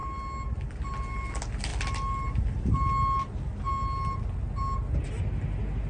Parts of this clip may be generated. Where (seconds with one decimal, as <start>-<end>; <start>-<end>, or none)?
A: none